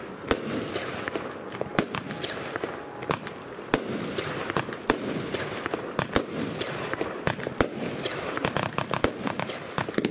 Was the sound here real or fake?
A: real